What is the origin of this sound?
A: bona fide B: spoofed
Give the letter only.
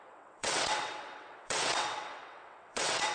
B